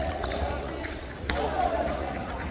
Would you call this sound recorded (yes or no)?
no